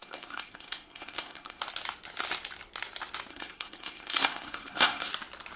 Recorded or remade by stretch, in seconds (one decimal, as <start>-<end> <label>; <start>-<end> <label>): 0.0-1.6 remade; 1.6-3.3 recorded; 3.3-5.1 remade; 5.1-5.6 recorded